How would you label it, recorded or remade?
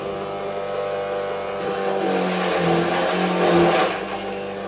recorded